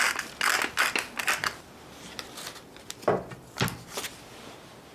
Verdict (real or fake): real